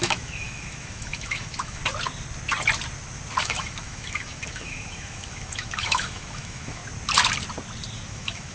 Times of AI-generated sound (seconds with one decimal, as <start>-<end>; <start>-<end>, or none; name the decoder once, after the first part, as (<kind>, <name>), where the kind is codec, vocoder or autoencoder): 0.0-1.8 (autoencoder, DAC-VAE); 3.4-6.8; 8.1-8.5